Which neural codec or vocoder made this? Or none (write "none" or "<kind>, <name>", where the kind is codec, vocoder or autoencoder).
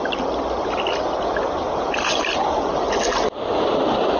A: none